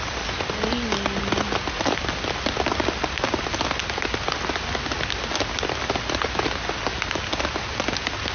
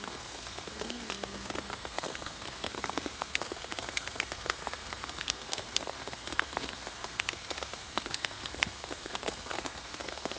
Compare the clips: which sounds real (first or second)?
first